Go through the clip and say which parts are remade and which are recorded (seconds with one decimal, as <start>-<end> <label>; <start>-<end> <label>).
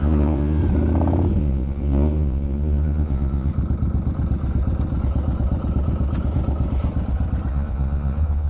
0.0-0.6 remade; 0.6-1.4 recorded; 1.4-3.5 remade; 3.5-7.5 recorded; 7.5-8.5 remade